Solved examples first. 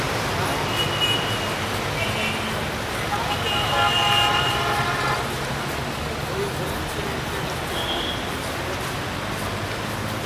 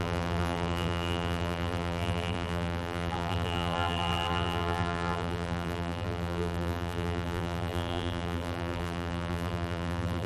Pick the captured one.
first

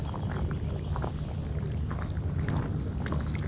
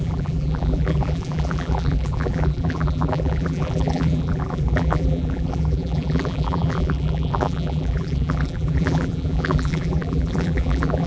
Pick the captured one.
first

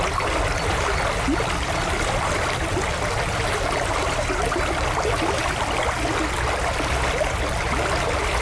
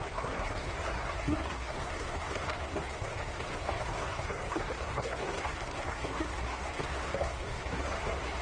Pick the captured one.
first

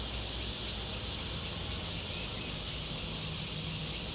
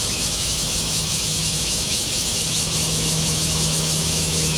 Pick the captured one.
first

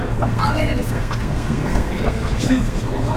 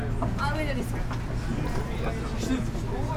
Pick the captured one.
second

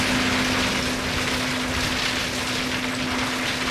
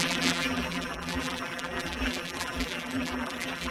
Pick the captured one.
first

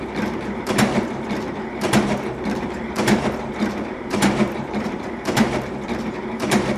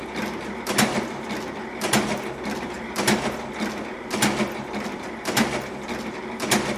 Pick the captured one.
second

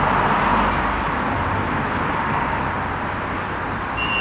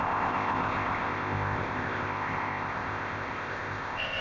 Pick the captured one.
first